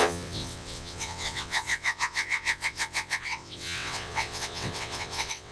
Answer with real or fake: fake